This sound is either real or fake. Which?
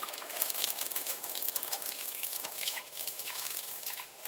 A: fake